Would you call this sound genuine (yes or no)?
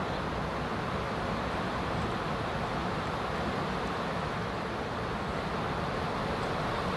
yes